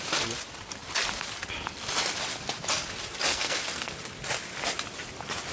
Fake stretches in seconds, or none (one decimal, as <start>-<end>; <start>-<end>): 3.3-3.9